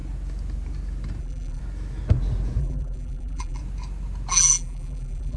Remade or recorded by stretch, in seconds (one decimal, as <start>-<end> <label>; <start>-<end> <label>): 0.0-1.2 recorded; 1.2-1.6 remade; 1.6-2.6 recorded; 2.6-3.6 remade; 3.6-4.3 recorded; 4.3-5.4 remade